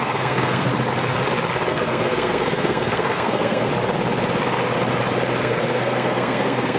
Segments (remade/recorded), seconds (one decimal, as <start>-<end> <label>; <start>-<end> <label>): 0.0-0.7 remade; 0.7-1.7 recorded; 1.7-3.7 remade; 3.7-5.4 recorded; 5.4-6.8 remade